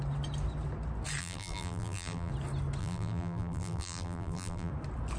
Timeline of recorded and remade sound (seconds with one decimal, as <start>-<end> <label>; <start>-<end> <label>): 0.0-1.2 recorded; 1.2-2.3 remade; 2.3-2.8 recorded; 2.8-4.7 remade; 4.7-5.2 recorded